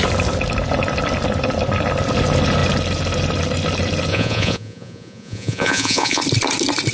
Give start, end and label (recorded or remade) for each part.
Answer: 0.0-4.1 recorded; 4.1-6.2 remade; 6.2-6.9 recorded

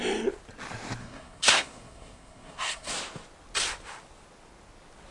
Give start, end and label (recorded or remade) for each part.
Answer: 0.0-1.0 recorded; 1.0-2.9 remade; 2.9-5.1 recorded

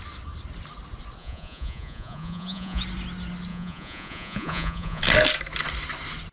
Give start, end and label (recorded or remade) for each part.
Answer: 0.0-1.2 recorded; 1.2-2.8 remade; 2.8-3.5 recorded; 3.5-5.0 remade; 5.0-6.3 recorded

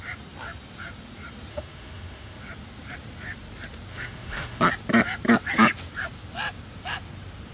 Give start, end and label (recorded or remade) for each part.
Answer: 0.0-1.5 recorded; 1.5-2.4 remade; 2.4-3.9 recorded; 3.9-4.6 remade; 4.6-7.5 recorded

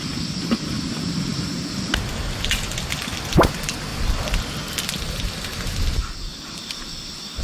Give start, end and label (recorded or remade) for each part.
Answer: 0.0-7.4 recorded

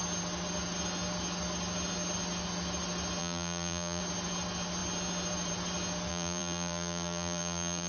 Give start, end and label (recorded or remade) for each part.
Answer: 0.0-3.2 recorded; 3.2-4.0 remade; 4.0-6.1 recorded; 6.1-7.9 remade

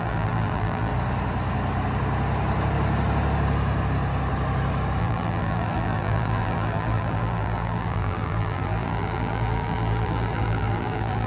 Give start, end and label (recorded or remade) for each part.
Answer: 0.0-0.9 remade; 0.9-5.0 recorded; 5.0-11.3 remade

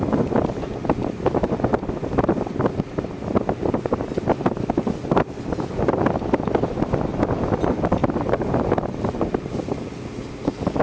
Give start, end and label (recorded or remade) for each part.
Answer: 0.0-1.0 recorded; 1.0-1.7 remade; 1.7-8.0 recorded; 8.0-9.7 remade; 9.7-10.8 recorded